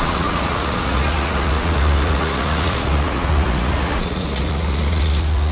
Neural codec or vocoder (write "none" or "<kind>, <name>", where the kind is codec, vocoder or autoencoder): vocoder, Vocos